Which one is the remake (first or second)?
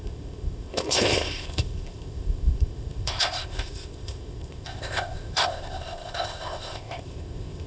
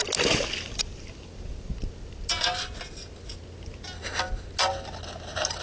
first